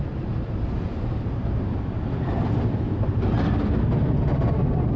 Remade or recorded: recorded